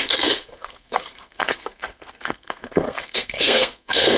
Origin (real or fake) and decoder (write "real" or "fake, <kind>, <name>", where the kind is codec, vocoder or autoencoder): fake, codec, SNAC